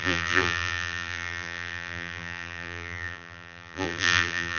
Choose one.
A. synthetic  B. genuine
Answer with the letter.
A